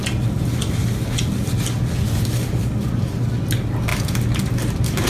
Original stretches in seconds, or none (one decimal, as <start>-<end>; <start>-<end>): 0.0-3.9